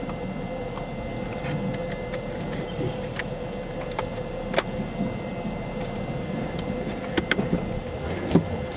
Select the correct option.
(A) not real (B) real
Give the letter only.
B